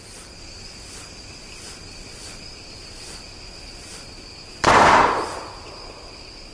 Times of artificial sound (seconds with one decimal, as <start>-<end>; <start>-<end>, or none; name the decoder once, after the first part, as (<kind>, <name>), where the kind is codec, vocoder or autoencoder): 0.0-6.5 (vocoder, BigVGAN v2)